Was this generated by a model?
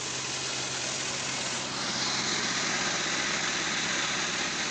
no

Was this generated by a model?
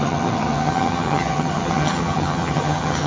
yes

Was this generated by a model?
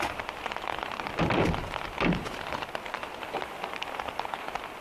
no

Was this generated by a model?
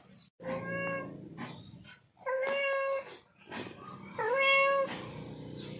no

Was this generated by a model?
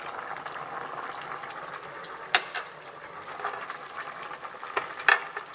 no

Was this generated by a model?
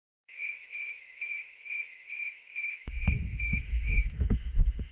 yes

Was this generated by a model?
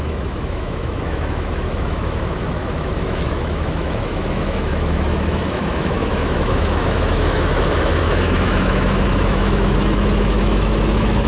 yes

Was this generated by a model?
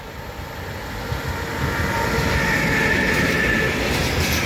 no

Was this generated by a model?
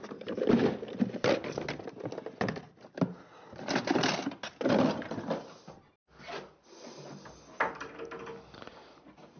no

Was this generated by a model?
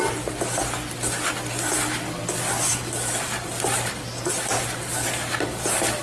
no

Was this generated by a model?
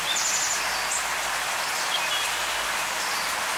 no